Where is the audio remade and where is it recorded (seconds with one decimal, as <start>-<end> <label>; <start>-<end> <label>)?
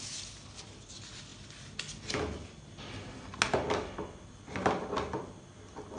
0.0-6.0 recorded